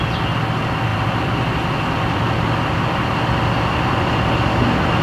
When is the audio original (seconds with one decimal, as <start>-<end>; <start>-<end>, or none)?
0.0-0.9; 3.1-5.0